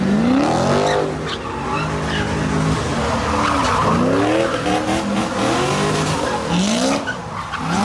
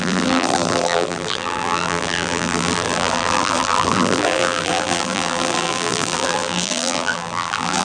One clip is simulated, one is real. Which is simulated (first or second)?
second